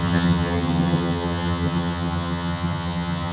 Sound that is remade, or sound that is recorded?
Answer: remade